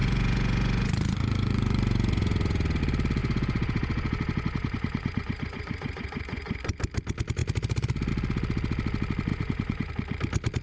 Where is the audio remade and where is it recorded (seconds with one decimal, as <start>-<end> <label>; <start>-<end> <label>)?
0.0-2.8 remade; 2.8-3.2 recorded; 3.2-6.8 remade; 6.8-9.3 recorded; 9.3-9.9 remade; 9.9-10.6 recorded